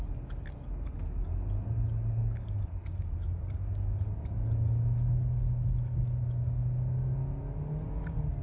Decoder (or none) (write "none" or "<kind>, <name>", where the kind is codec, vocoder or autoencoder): none